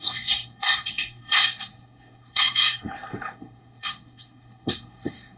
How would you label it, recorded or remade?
remade